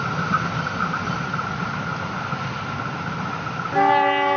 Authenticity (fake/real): real